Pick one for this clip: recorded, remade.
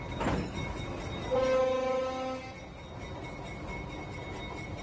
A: recorded